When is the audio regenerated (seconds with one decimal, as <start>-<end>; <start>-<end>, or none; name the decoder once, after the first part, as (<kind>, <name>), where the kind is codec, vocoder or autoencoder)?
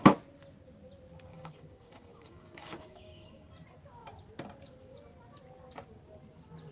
1.3-3.5 (codec, DAC)